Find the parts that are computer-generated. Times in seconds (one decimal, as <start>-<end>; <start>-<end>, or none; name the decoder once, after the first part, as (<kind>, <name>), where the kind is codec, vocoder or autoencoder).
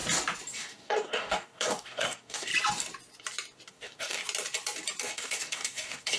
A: 0.5-2.5 (codec, DAC); 3.7-4.2; 5.0-6.2